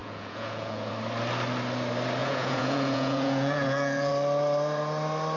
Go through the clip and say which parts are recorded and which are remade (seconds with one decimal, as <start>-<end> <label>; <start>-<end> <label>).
0.0-0.9 remade; 0.9-2.2 recorded; 2.2-4.1 remade; 4.1-5.4 recorded